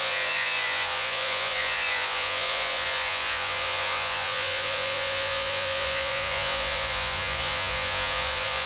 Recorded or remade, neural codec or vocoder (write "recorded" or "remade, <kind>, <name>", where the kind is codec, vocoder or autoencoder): remade, vocoder, Vocos